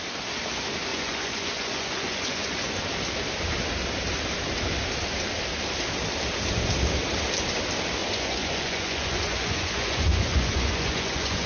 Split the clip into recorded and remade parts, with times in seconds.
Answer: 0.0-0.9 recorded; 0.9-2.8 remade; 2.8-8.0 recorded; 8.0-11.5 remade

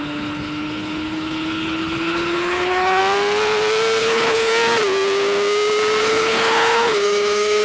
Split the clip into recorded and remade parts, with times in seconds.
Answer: 0.0-3.0 remade; 3.0-4.0 recorded; 4.0-4.5 remade; 4.5-6.0 recorded; 6.0-7.6 remade

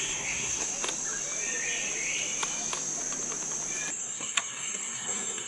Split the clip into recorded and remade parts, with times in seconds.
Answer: 0.0-0.7 remade; 0.7-4.0 recorded; 4.0-5.5 remade

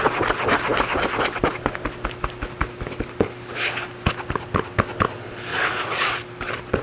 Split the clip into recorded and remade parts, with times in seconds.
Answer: 0.0-5.5 recorded; 5.5-6.1 remade; 6.1-6.8 recorded